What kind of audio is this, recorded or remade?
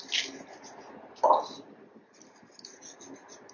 recorded